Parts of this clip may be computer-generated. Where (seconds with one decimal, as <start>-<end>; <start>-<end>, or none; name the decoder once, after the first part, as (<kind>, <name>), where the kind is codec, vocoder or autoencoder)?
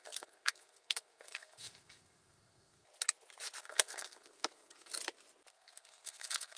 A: 0.0-2.9 (codec, SNAC); 3.6-4.9; 5.5-6.6